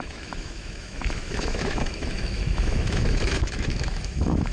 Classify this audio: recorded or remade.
remade